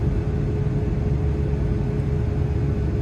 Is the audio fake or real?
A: real